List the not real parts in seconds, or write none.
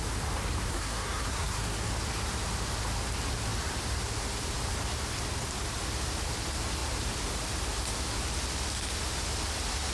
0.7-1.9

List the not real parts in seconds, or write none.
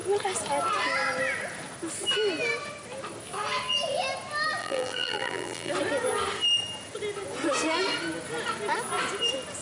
4.6-5.7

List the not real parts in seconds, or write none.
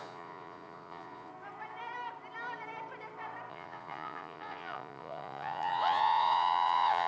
0.0-1.3; 3.5-7.1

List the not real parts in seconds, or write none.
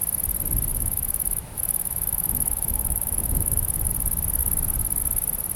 0.7-3.9